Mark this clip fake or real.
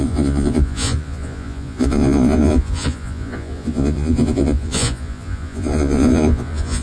fake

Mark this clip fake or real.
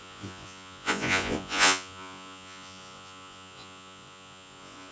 fake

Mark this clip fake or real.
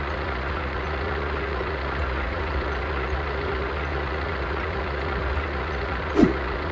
fake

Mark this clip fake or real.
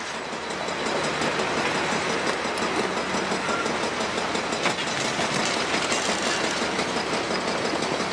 real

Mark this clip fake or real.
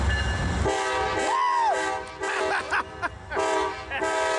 real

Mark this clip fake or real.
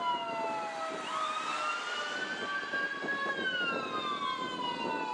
real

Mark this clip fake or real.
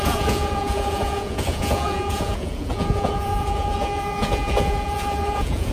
fake